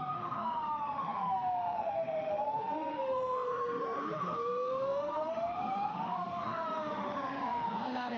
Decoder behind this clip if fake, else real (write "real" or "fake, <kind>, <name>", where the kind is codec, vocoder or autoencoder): fake, autoencoder, DAC-VAE